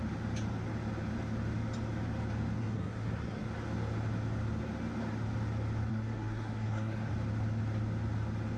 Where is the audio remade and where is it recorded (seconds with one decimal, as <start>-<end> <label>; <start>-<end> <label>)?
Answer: 0.0-2.6 recorded; 2.6-3.5 remade; 3.5-5.9 recorded; 5.9-7.1 remade; 7.1-8.6 recorded